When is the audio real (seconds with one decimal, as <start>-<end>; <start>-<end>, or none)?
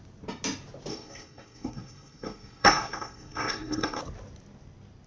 0.0-0.9; 4.0-5.1